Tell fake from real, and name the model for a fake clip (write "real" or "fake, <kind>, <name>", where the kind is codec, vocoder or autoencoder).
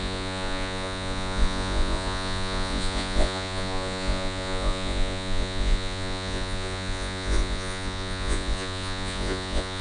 fake, vocoder, Vocos